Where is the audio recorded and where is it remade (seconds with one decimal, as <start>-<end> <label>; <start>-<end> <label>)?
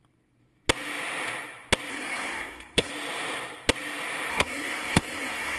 0.0-1.9 recorded; 1.9-2.9 remade; 2.9-4.3 recorded; 4.3-5.6 remade